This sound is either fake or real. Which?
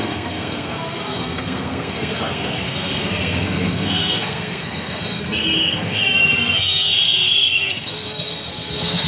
fake